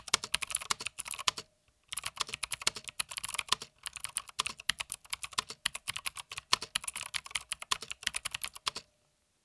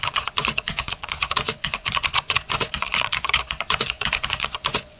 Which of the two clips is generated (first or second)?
second